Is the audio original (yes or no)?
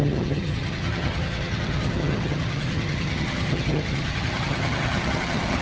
no